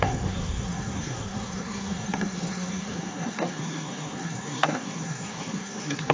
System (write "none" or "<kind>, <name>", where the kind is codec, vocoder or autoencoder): codec, SNAC